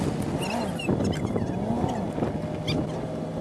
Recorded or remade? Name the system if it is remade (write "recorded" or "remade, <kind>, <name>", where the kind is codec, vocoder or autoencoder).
recorded